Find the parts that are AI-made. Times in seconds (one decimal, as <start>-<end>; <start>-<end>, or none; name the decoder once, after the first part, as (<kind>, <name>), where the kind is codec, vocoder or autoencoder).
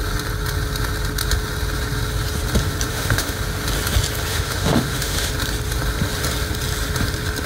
2.9-3.4 (autoencoder, DAC-VAE); 4.3-5.3